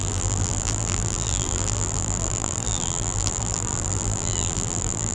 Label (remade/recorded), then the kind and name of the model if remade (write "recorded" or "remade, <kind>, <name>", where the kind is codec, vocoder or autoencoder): remade, vocoder, BigVGAN v2